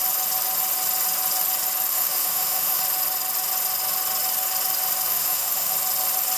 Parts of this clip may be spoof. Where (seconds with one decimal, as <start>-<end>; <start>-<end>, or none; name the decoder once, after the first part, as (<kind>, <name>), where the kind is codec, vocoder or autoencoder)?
1.9-2.8 (autoencoder, DAC-VAE); 5.1-5.7